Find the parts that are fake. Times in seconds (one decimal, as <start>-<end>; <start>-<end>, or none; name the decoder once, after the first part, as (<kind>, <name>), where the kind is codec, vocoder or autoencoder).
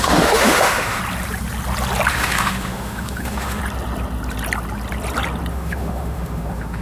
0.0-1.0 (autoencoder, DAC-VAE); 2.1-3.6; 5.5-6.8